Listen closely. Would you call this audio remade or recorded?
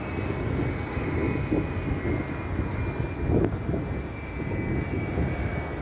recorded